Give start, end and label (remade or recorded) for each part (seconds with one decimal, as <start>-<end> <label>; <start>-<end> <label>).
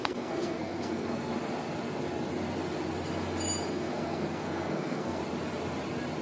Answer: 0.0-1.3 remade; 1.3-3.7 recorded; 3.7-5.2 remade; 5.2-6.2 recorded